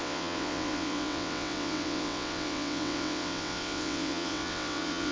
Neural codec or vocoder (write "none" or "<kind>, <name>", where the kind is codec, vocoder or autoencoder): vocoder, WaveNeXt